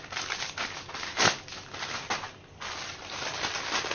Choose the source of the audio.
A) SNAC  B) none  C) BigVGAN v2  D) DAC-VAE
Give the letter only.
B